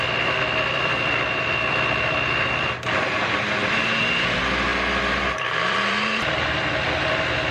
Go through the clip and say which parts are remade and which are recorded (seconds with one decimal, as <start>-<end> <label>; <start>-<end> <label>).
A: 0.0-7.5 remade